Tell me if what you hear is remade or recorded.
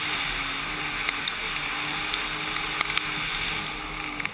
recorded